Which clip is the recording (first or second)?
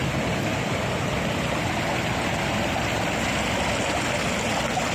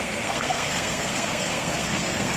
first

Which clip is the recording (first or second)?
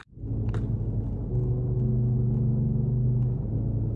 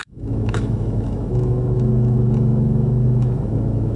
first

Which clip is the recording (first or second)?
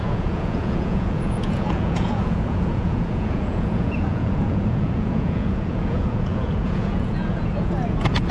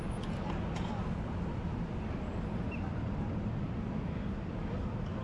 second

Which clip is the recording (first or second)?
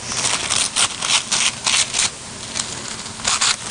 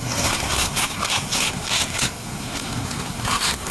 first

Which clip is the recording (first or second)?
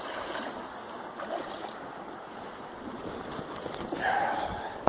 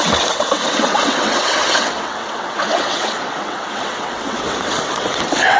first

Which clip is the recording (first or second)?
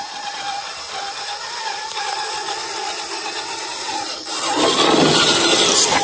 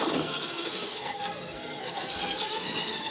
first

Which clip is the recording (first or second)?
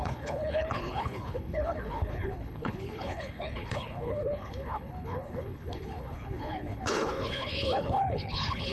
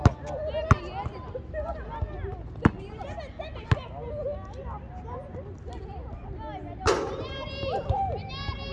second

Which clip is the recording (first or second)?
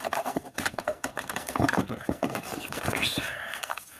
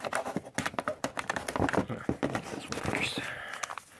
second